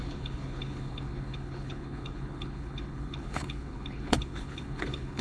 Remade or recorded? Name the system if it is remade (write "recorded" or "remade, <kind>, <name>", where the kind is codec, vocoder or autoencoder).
remade, codec, HILCodec